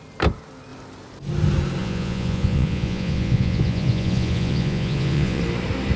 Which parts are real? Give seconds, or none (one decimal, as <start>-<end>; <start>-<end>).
0.0-1.8; 5.4-6.0